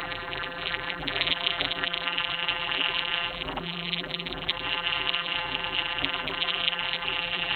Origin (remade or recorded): remade